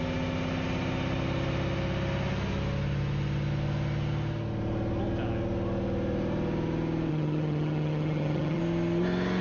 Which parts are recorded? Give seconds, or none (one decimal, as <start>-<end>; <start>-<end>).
0.0-7.1; 8.6-9.4